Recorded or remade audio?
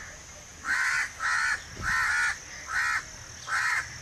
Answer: recorded